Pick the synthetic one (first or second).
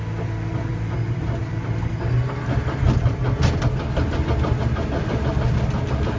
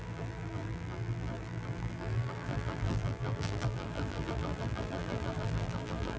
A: second